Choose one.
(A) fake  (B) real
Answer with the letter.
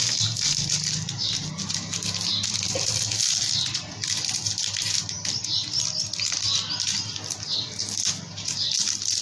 B